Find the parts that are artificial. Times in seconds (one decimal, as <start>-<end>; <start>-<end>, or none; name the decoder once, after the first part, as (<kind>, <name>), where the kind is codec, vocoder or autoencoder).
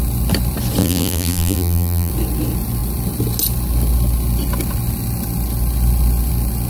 0.8-2.1 (vocoder, BigVGAN v2)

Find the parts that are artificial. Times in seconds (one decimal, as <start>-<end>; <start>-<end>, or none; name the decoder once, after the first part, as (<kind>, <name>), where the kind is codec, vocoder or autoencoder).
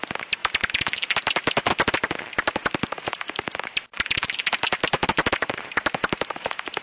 0.4-1.7 (vocoder, BigVGAN v2); 2.6-6.8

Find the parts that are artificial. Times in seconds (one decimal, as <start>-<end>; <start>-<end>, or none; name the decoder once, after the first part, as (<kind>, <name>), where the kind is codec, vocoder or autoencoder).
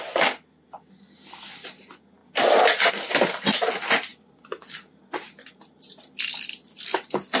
4.1-5.5 (vocoder, BigVGAN v2)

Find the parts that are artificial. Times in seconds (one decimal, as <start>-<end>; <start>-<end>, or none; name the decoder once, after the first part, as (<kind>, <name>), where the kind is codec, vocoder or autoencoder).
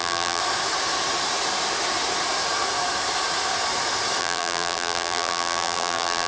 0.0-0.4 (vocoder, BigVGAN v2); 4.2-6.3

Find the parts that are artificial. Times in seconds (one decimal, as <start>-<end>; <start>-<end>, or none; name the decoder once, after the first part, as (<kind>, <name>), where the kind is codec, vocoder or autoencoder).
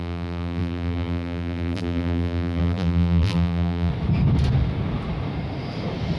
0.0-3.9 (vocoder, BigVGAN v2)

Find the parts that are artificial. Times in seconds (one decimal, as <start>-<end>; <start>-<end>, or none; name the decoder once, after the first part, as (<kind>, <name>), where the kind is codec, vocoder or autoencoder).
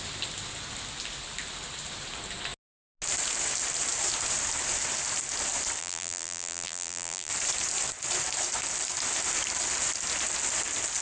5.8-7.3 (vocoder, BigVGAN v2)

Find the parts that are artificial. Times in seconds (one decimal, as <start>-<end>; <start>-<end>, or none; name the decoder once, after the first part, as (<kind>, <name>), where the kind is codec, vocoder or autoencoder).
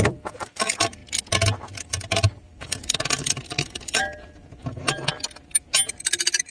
0.0-1.0 (vocoder, BigVGAN v2); 1.9-4.8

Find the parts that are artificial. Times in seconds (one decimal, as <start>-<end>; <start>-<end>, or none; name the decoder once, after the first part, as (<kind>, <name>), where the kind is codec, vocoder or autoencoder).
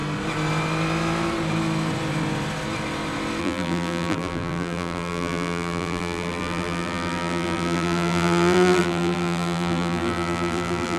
3.4-11.0 (vocoder, BigVGAN v2)